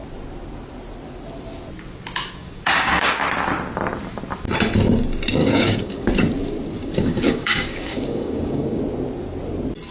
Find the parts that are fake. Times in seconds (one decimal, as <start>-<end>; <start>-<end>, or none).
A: 2.4-3.2; 5.4-6.1; 6.8-8.8